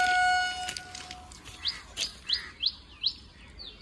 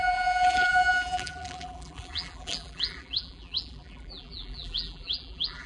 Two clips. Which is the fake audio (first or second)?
second